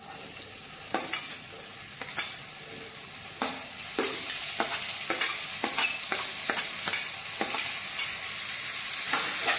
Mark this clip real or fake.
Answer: real